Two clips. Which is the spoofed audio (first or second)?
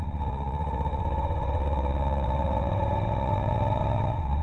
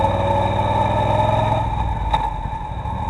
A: first